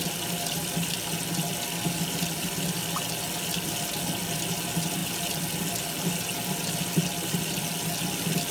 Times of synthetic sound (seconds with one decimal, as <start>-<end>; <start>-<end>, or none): none